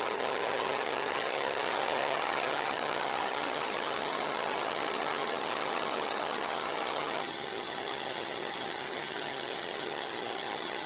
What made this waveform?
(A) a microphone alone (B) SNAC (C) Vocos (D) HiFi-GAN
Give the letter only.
D